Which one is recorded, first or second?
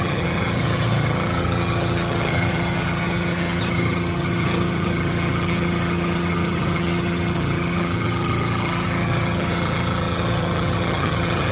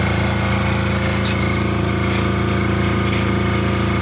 second